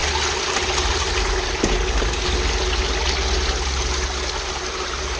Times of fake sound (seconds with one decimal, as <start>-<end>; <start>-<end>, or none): none